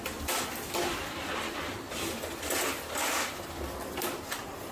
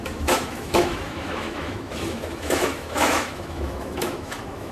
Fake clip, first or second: second